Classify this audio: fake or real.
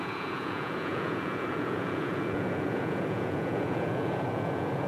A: fake